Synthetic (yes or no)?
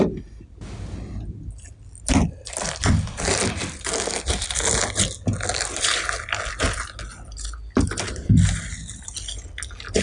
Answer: no